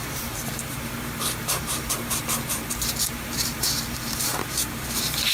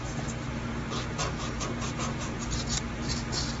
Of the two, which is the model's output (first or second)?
first